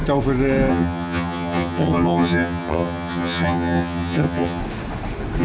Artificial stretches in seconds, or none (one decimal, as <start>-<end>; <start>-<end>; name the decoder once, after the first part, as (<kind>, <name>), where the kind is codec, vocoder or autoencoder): 0.7-4.6 (vocoder, HiFi-GAN)